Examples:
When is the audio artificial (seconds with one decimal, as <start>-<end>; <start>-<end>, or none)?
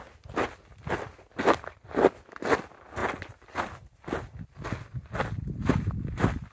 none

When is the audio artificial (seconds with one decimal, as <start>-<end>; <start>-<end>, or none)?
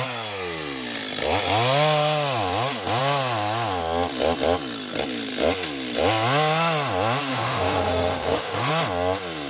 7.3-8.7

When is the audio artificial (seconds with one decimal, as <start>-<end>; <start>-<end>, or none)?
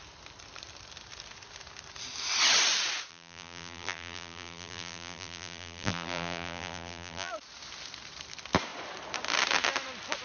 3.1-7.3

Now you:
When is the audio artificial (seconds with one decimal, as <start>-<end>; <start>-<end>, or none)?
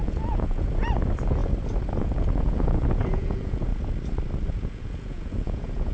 0.0-1.4; 2.0-3.7; 4.5-5.9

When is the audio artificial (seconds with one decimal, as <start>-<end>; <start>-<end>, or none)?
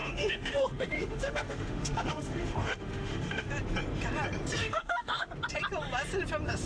0.0-3.5; 4.6-5.3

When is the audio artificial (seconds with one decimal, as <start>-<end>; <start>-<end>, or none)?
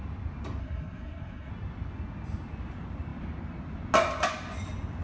0.6-1.5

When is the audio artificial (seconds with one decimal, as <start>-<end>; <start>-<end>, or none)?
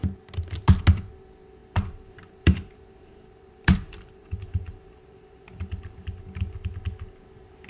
1.6-6.2